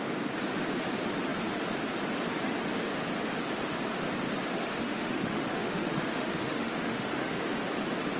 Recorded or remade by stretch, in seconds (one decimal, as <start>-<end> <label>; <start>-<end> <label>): 0.0-4.5 recorded; 4.5-7.4 remade; 7.4-8.2 recorded